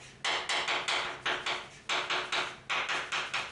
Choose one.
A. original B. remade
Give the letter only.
A